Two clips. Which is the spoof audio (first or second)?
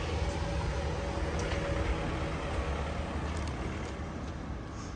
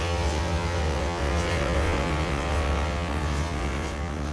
second